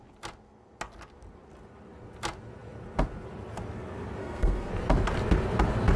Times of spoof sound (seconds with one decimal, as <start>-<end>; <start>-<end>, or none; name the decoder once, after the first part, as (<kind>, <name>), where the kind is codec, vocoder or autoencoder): 4.2-4.7 (codec, SNAC)